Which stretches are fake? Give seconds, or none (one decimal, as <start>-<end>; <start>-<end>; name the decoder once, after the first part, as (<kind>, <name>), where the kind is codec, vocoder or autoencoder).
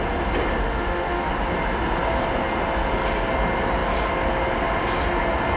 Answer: 0.6-1.3 (autoencoder, DAC-VAE)